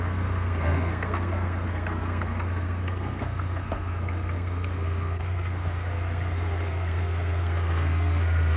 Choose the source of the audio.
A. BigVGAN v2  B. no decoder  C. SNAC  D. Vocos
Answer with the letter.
C